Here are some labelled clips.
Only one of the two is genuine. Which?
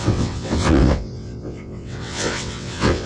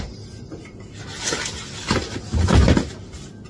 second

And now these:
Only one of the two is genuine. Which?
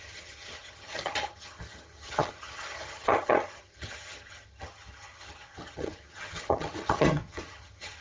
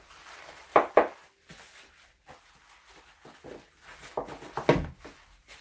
second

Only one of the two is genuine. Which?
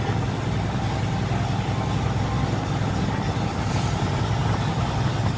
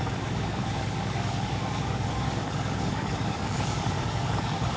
first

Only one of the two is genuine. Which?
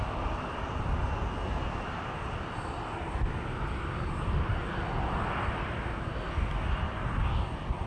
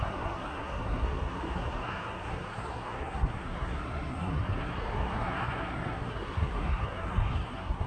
first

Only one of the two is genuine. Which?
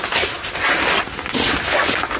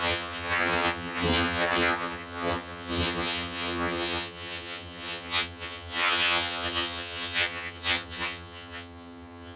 first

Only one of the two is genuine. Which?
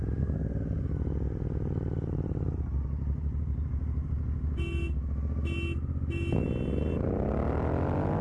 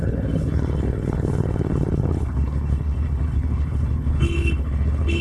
first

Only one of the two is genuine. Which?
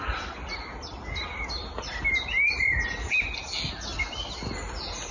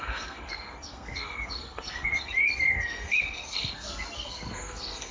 first